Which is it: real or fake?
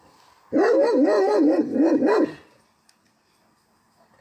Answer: real